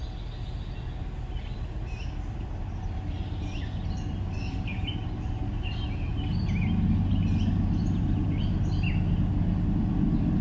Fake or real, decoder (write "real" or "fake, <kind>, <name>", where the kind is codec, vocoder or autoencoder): real